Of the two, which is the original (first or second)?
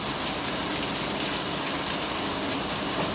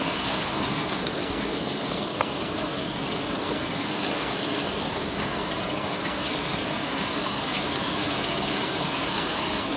first